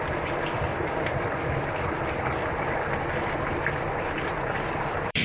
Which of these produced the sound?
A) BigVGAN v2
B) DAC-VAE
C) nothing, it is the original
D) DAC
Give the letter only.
A